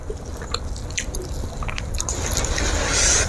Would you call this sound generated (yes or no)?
no